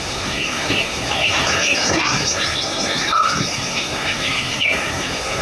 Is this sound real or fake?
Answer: fake